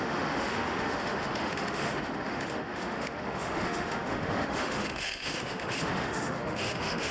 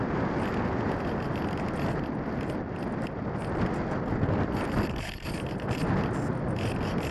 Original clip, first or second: second